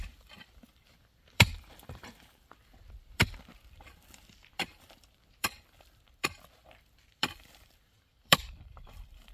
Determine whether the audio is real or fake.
fake